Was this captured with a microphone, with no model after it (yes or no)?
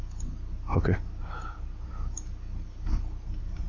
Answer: yes